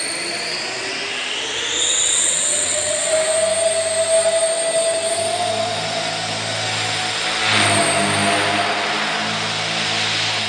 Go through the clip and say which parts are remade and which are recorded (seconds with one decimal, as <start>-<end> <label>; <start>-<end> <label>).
0.0-1.8 recorded; 1.8-3.1 remade; 3.1-10.5 recorded